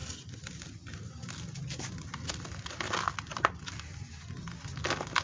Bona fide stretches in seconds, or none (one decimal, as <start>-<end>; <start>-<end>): 0.0-5.2